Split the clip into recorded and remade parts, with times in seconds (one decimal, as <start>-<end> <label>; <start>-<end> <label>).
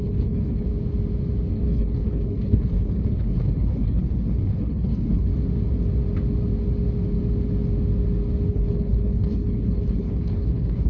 0.0-0.7 remade; 0.7-1.5 recorded; 1.5-5.3 remade; 5.3-8.5 recorded; 8.5-10.9 remade